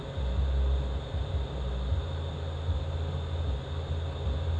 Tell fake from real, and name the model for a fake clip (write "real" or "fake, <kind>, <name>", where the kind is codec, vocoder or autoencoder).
real